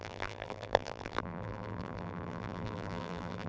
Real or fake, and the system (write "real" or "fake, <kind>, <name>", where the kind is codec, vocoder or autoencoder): fake, vocoder, BigVGAN v2